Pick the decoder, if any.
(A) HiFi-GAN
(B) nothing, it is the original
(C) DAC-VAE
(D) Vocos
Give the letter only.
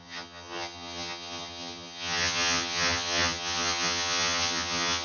A